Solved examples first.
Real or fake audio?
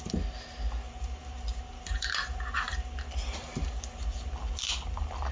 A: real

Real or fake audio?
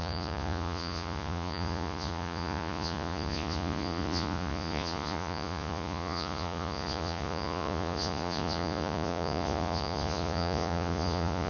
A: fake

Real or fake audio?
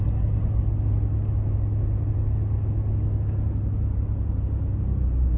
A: real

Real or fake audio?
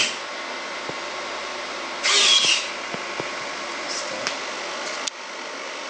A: real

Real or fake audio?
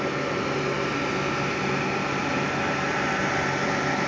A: real